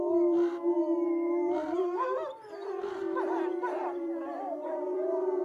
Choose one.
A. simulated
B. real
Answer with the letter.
A